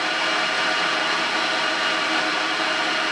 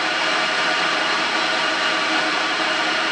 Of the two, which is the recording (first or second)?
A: first